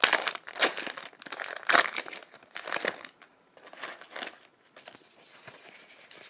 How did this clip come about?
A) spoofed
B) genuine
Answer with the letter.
B